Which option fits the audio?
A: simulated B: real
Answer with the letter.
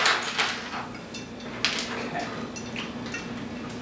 B